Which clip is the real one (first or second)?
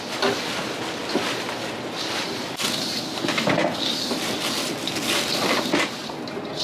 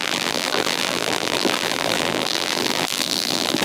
first